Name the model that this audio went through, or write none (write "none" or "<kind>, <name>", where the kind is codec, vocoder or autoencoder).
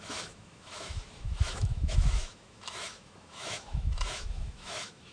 autoencoder, DAC-VAE